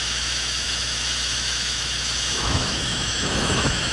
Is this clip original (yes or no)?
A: no